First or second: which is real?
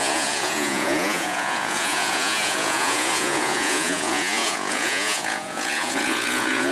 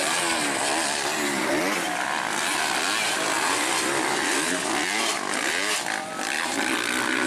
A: second